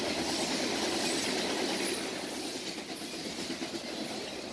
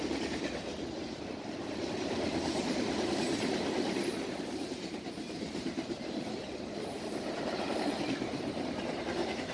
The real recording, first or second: first